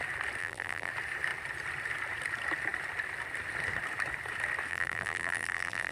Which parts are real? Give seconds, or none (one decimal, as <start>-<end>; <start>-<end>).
0.0-0.4; 0.9-4.7

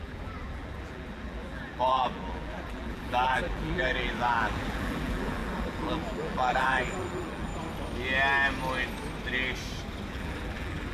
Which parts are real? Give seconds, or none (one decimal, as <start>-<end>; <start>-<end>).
7.5-10.1

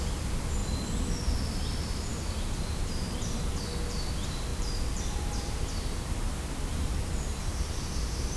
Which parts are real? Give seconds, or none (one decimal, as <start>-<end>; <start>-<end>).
0.0-2.1; 3.5-4.5; 7.5-8.4

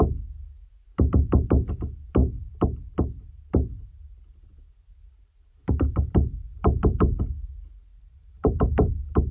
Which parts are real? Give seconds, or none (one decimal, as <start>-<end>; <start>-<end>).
0.0-6.5; 7.2-7.9; 8.9-9.3

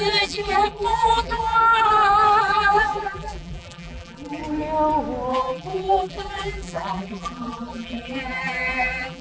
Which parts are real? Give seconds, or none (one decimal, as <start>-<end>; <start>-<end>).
1.6-2.4; 4.4-5.3

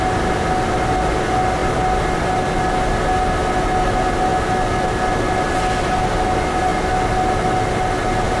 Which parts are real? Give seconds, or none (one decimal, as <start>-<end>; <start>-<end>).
0.0-8.4